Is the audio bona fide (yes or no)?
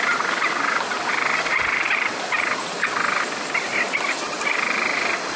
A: yes